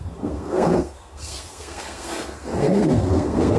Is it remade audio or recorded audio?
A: remade